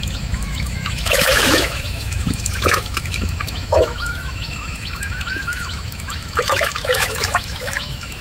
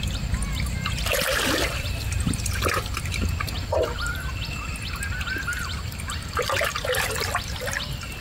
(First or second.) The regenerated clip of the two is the first